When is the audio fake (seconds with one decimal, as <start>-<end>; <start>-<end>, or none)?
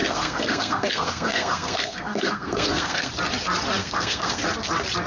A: 0.0-3.1; 3.8-4.4